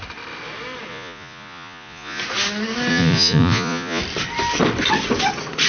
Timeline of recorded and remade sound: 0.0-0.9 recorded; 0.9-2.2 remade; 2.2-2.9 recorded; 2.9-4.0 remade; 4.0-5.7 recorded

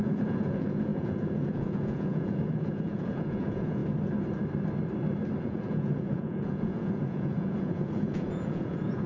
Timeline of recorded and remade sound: 0.0-3.8 remade; 3.8-5.4 recorded; 5.4-9.1 remade

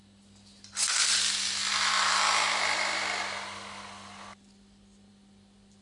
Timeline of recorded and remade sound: 0.0-5.8 recorded

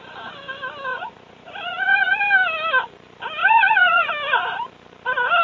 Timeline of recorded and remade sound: 0.0-0.9 recorded; 0.9-2.2 remade; 2.2-3.4 recorded; 3.4-4.1 remade; 4.1-5.4 recorded